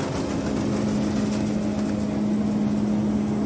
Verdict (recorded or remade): recorded